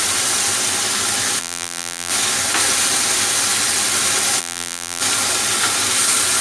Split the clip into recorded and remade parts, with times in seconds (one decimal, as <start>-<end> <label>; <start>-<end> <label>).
0.0-1.4 recorded; 1.4-2.1 remade; 2.1-4.4 recorded; 4.4-5.0 remade; 5.0-6.4 recorded